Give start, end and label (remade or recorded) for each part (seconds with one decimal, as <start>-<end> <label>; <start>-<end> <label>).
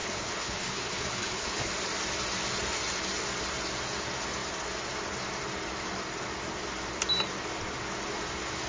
0.0-1.7 remade; 1.7-8.7 recorded